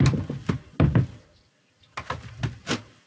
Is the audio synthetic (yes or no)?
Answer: no